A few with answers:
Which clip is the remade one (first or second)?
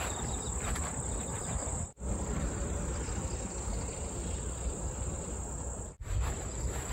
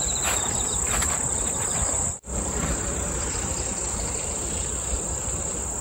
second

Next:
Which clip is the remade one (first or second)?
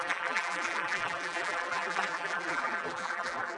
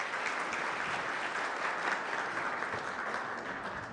first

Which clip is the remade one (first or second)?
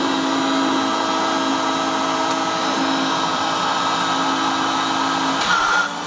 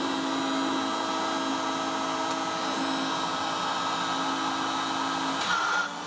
first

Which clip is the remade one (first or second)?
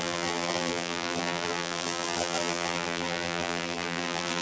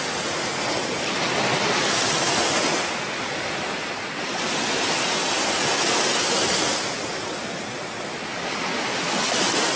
first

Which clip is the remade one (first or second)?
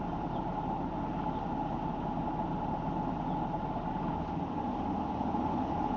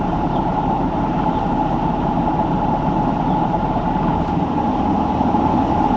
second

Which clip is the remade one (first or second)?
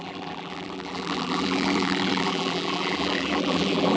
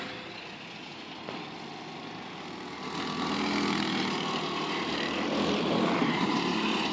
first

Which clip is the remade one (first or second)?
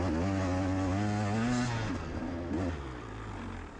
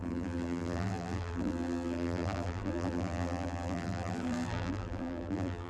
second